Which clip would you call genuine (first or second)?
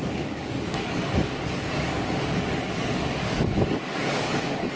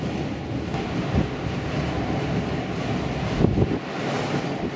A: second